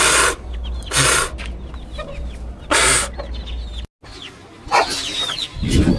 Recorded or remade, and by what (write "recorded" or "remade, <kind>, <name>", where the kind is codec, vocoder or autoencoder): recorded